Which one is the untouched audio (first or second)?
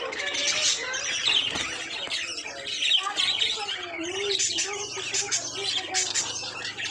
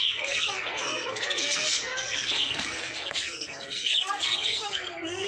first